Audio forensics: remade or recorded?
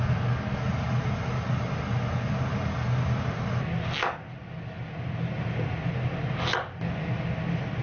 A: recorded